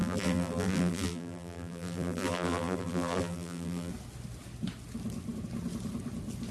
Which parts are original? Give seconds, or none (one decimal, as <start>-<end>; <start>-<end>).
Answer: 3.9-6.5